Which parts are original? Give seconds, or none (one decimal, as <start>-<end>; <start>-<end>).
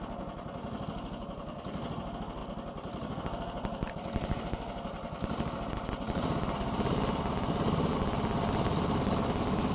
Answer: 0.0-9.7